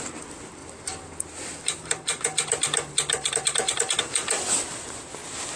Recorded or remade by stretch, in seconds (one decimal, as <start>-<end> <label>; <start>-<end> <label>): 0.0-0.6 recorded; 0.6-4.0 remade; 4.0-5.6 recorded

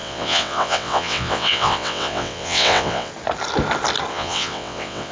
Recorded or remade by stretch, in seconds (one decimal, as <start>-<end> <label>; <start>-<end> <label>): 0.0-3.1 remade; 3.1-4.1 recorded; 4.1-5.1 remade